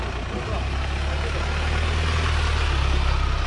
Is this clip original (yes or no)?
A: yes